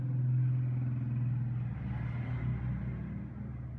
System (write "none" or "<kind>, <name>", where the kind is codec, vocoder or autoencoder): none